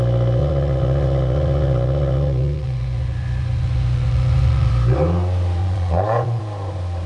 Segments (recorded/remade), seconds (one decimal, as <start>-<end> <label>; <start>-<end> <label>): 0.0-0.4 recorded; 0.4-4.7 remade; 4.7-5.6 recorded; 5.6-6.4 remade; 6.4-7.1 recorded